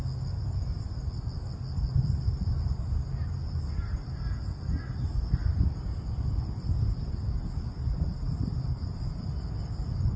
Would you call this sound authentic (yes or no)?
yes